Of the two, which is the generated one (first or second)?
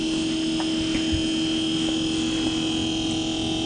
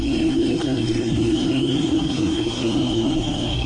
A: second